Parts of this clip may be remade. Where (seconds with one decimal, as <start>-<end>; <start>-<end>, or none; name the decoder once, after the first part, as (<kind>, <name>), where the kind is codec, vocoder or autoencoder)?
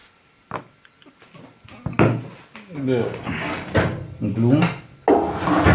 3.0-3.7 (codec, DAC)